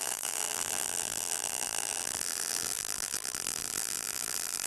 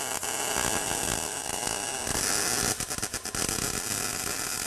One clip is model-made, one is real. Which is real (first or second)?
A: second